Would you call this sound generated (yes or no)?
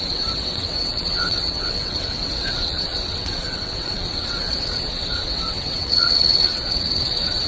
yes